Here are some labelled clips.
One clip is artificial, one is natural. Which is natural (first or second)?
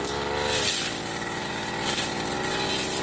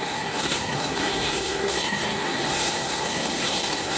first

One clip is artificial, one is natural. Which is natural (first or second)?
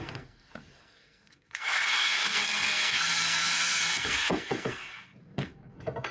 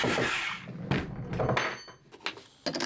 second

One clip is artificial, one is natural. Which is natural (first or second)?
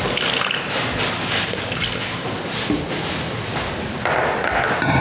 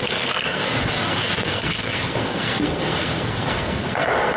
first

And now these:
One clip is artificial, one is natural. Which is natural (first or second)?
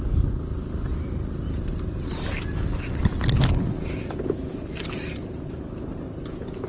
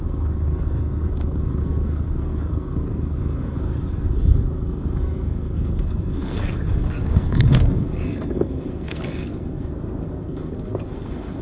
first